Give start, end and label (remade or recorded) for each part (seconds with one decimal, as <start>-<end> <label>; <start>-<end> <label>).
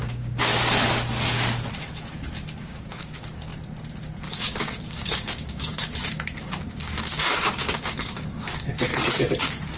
0.0-0.5 remade; 0.5-2.6 recorded; 2.6-3.5 remade; 3.5-4.3 recorded; 4.3-8.9 remade; 8.9-9.4 recorded; 9.4-9.8 remade